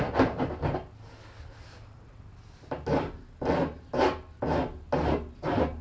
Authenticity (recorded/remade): recorded